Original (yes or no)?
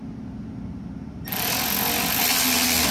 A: yes